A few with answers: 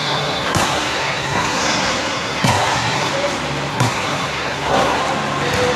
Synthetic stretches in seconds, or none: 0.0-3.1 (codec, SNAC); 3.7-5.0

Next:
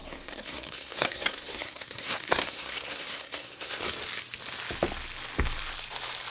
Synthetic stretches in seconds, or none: 0.0-3.8 (codec, SNAC)

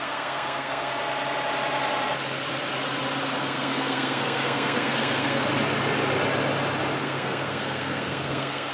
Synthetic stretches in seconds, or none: 0.0-0.9 (codec, SNAC); 3.2-5.5; 7.0-8.7

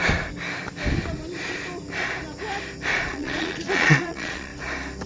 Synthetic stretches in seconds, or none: 3.1-4.5 (vocoder, Vocos)

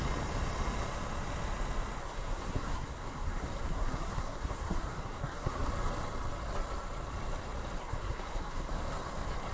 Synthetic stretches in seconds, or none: 2.0-5.7 (codec, SNAC); 7.8-8.7